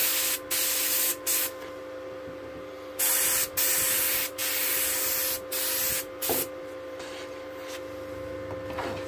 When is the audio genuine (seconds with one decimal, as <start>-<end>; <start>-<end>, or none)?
0.0-9.1